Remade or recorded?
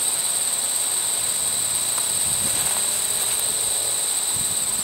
recorded